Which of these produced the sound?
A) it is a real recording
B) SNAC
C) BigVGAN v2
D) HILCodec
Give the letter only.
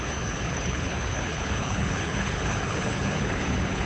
D